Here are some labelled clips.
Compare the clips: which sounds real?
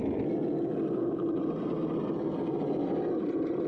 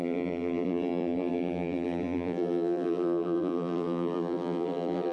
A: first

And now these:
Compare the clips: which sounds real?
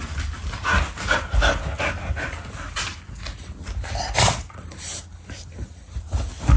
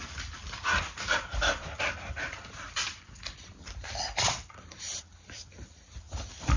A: first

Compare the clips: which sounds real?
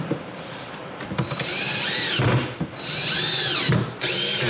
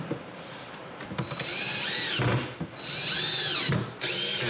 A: second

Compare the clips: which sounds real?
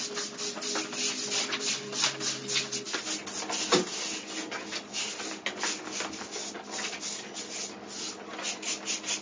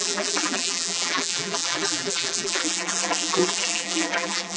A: first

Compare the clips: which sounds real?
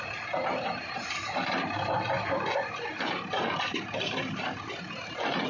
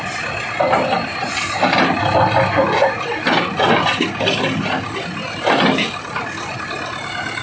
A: second